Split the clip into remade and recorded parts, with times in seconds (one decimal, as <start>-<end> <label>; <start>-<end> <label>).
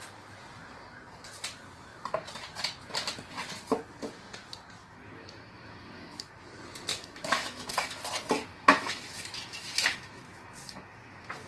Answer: 0.0-4.8 recorded; 4.8-6.3 remade; 6.3-6.9 recorded; 6.9-8.0 remade; 8.0-8.5 recorded; 8.5-11.5 remade